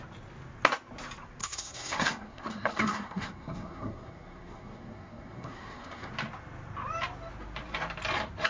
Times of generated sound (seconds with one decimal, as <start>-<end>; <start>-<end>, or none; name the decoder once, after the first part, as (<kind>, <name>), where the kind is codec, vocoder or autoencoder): 1.4-6.1 (codec, SNAC)